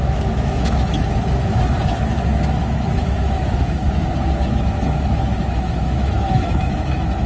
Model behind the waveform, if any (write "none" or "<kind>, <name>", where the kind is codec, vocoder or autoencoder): autoencoder, DAC-VAE